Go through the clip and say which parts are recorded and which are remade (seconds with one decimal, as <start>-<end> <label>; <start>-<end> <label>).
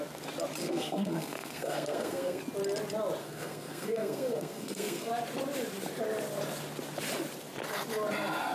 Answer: 0.0-0.6 recorded; 0.6-2.4 remade; 2.4-3.2 recorded; 3.2-5.1 remade; 5.1-8.5 recorded